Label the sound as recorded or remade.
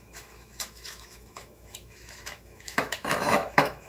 remade